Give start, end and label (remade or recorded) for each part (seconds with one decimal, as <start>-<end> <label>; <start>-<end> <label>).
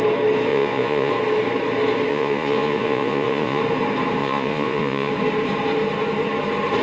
0.0-0.5 recorded; 0.5-1.1 remade; 1.1-2.1 recorded; 2.1-3.6 remade; 3.6-4.2 recorded; 4.2-5.1 remade; 5.1-6.8 recorded